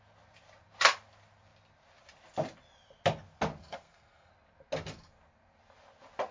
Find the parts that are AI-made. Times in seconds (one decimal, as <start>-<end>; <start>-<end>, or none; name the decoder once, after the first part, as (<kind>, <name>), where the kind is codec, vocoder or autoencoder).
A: 3.6-4.3 (codec, SNAC)